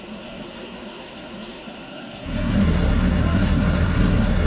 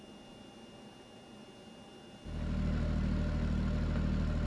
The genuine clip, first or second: second